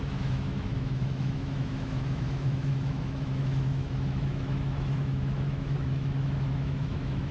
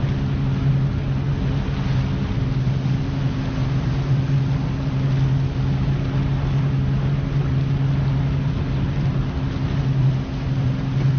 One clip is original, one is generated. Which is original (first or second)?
second